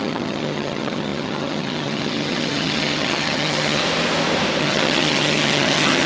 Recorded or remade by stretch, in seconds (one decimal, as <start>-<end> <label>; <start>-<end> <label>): 0.0-3.8 remade; 3.8-4.6 recorded; 4.6-6.1 remade

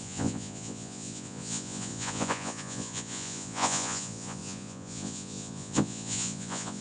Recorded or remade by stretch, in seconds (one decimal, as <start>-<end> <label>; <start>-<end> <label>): 0.0-6.8 remade

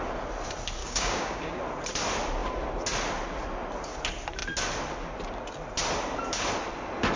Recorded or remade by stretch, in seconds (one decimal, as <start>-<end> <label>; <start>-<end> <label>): 0.0-0.8 recorded; 0.8-1.6 remade; 1.6-7.2 recorded